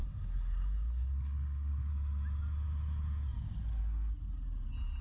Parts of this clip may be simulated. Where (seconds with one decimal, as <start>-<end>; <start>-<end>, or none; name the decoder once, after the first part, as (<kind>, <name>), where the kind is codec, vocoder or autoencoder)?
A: 0.0-1.9 (codec, SNAC)